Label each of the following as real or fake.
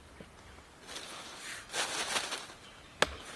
real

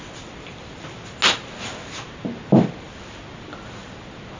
real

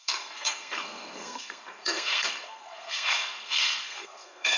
fake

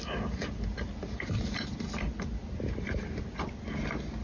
real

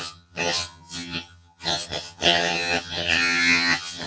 fake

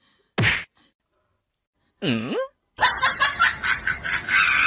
real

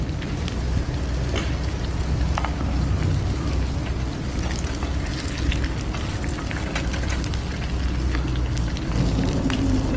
real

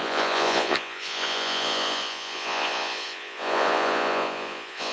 fake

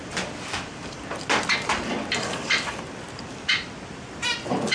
fake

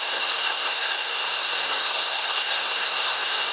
fake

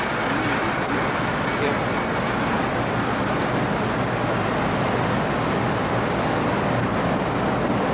real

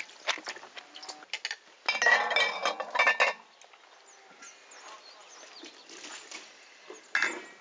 real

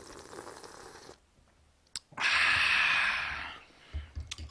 real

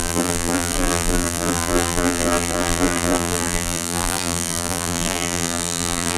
fake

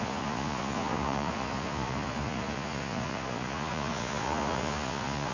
fake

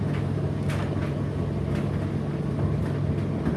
real